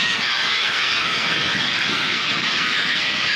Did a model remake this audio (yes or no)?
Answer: yes